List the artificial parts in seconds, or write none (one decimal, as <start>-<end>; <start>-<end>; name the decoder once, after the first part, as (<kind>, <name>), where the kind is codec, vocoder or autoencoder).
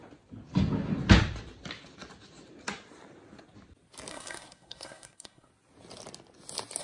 4.1-5.5 (codec, SNAC)